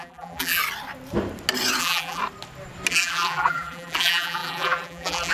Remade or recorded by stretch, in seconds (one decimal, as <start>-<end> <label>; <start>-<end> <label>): 0.0-0.6 remade; 0.6-1.8 recorded; 1.8-2.2 remade; 2.2-2.9 recorded; 2.9-5.3 remade